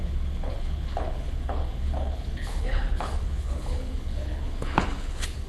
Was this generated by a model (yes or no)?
yes